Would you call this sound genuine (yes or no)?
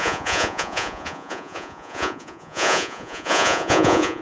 no